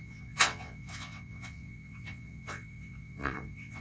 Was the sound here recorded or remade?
remade